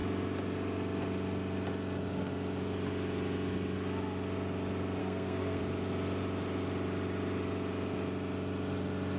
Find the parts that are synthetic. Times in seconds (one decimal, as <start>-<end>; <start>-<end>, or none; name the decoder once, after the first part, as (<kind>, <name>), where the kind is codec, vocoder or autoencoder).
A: 5.0-5.6 (codec, SNAC)